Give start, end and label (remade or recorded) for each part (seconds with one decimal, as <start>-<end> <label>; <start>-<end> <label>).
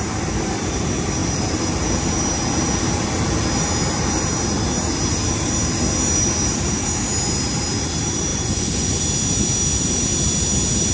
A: 0.0-8.3 recorded; 8.3-9.0 remade; 9.0-10.9 recorded